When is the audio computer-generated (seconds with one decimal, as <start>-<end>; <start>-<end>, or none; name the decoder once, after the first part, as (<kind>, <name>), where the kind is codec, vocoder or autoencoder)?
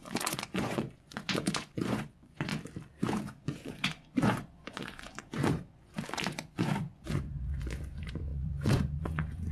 0.0-2.5 (vocoder, Vocos); 3.2-9.5